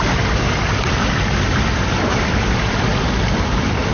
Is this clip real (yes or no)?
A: no